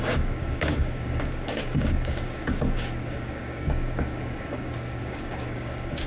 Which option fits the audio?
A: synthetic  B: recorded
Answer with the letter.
A